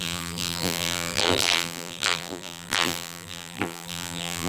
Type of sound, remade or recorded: remade